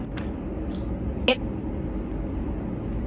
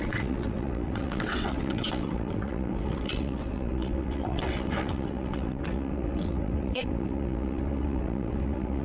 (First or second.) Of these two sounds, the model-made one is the second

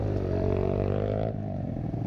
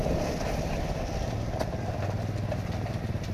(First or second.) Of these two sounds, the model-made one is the first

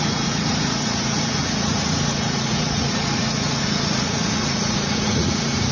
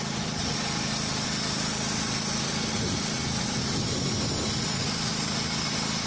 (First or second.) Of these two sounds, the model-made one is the first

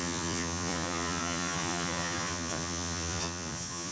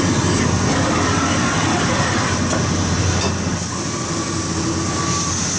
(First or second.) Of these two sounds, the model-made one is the first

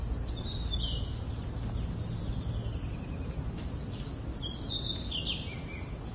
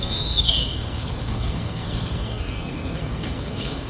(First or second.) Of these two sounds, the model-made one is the second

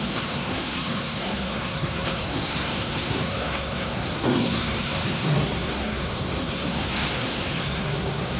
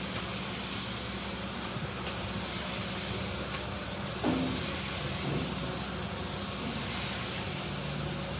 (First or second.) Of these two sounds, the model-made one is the first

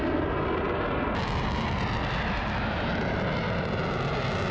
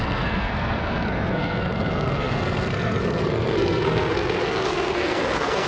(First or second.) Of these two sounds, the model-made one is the second